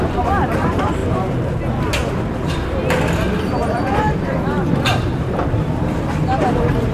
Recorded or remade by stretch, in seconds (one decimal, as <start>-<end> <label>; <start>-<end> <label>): 0.0-1.0 remade; 1.0-2.1 recorded; 2.1-2.8 remade; 2.8-3.7 recorded; 3.7-6.9 remade